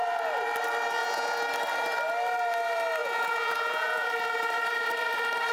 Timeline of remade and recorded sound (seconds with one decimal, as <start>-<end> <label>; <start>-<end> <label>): 0.0-1.0 recorded; 1.0-1.5 remade; 1.5-3.0 recorded; 3.0-4.1 remade; 4.1-5.5 recorded